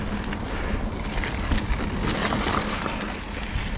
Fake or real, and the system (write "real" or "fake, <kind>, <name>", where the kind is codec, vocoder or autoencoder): real